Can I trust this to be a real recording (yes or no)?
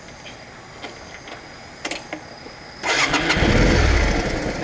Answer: yes